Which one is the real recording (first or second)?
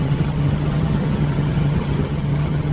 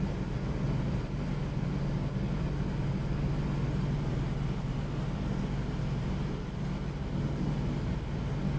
second